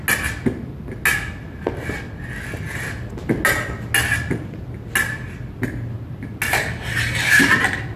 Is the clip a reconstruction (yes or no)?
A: no